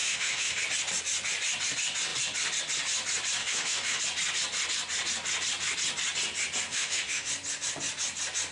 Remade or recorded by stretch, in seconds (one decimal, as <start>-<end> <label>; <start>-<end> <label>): 0.0-0.6 remade; 0.6-3.4 recorded; 3.4-4.0 remade; 4.0-6.7 recorded; 6.7-7.3 remade; 7.3-8.5 recorded